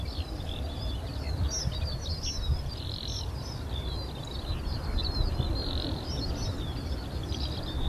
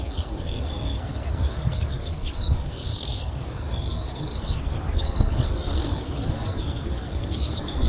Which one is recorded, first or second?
first